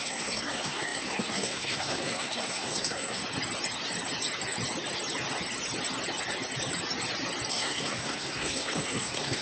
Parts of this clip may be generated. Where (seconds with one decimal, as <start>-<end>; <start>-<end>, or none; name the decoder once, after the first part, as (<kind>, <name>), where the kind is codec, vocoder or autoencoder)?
0.0-3.2 (codec, SNAC); 7.5-9.4